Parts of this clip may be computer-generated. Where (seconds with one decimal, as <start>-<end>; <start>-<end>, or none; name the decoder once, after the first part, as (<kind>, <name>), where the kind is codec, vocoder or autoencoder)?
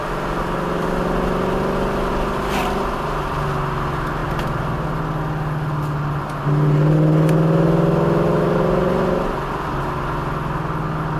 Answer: none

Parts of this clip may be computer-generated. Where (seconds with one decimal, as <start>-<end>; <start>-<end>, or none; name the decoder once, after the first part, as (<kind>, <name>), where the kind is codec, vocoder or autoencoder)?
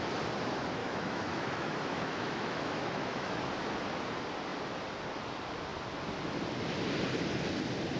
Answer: 0.8-3.4 (autoencoder, DAC-VAE)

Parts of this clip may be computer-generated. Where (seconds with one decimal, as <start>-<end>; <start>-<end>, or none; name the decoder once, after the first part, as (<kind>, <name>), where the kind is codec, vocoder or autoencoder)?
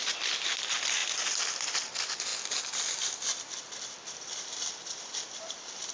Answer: none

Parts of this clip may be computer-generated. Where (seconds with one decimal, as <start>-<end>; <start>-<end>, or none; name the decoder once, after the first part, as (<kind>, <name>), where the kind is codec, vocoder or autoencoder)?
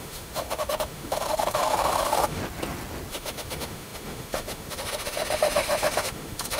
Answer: 0.0-2.4 (autoencoder, DAC-VAE); 3.1-6.6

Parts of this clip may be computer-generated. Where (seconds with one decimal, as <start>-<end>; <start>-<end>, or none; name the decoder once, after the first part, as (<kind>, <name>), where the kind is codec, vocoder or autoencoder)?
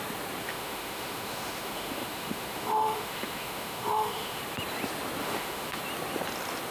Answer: 0.4-4.4 (autoencoder, DAC-VAE); 5.2-5.8